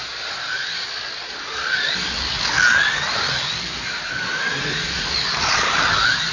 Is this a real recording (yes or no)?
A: yes